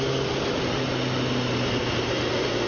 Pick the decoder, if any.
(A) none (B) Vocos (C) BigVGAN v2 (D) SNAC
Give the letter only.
A